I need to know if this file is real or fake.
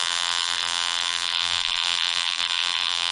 fake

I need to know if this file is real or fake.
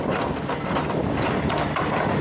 real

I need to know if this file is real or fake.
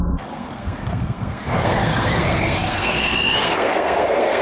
fake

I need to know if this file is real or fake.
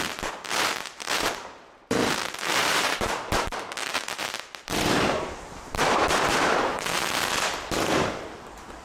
fake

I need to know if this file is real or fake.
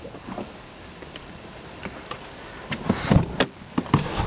real